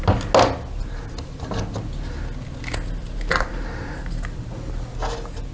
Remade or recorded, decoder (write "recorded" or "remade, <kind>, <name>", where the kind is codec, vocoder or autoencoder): recorded